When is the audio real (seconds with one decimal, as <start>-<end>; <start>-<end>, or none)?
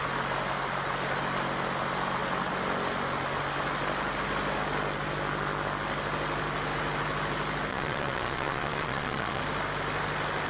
0.0-7.7; 9.4-10.5